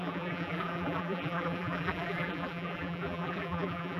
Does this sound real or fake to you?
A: fake